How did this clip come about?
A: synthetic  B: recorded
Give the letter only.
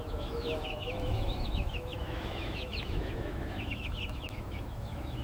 A